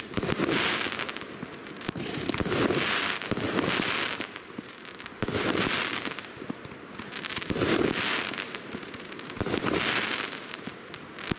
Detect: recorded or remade recorded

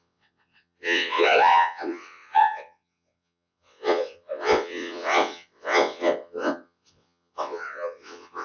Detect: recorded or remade remade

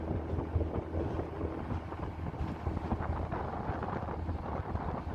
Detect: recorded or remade recorded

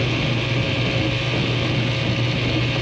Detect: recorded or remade recorded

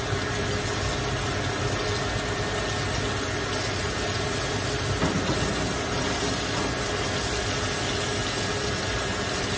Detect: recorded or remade recorded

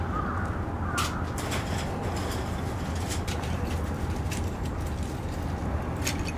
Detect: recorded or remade recorded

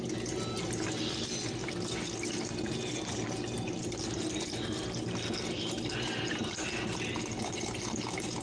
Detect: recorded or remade recorded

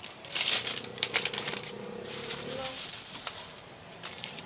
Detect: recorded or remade remade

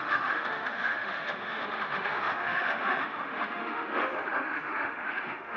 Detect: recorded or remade remade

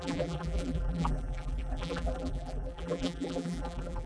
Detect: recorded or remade remade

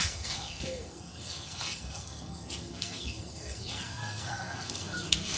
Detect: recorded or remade remade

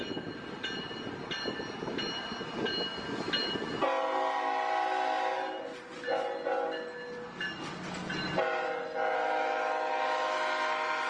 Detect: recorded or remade recorded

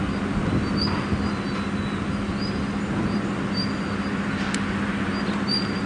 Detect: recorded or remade recorded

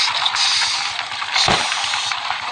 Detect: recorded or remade recorded